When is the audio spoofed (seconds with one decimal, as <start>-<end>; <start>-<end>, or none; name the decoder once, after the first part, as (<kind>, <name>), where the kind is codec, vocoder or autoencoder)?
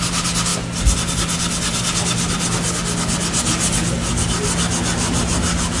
none